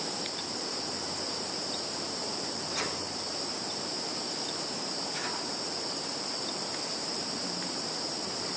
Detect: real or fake fake